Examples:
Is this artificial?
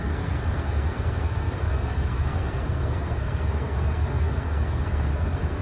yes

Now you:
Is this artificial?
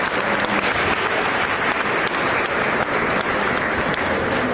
no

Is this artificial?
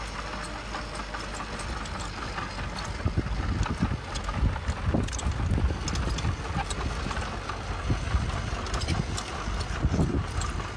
no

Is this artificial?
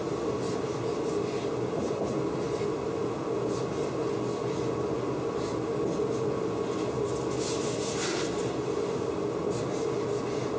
no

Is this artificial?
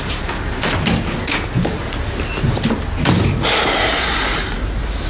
no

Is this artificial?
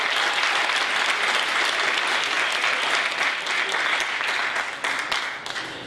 no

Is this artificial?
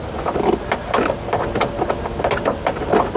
no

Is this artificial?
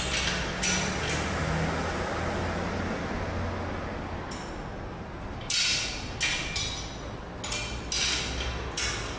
no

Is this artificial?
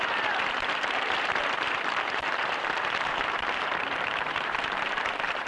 yes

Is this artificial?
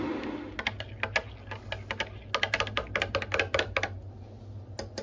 no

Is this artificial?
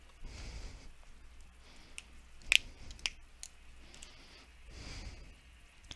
no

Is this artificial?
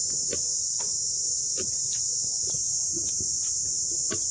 no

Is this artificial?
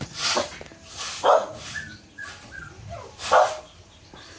no